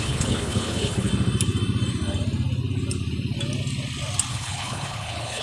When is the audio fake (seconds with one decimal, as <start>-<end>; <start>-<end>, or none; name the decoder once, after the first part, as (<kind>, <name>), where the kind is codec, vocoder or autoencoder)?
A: 0.0-1.1 (codec, HILCodec); 4.3-5.4